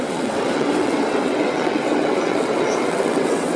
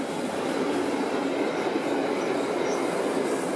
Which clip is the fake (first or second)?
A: first